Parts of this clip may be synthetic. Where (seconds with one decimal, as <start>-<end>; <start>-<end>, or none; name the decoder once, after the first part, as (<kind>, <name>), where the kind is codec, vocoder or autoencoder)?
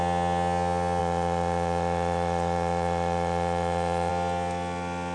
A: 1.0-4.1 (vocoder, Vocos)